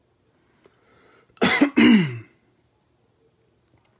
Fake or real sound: real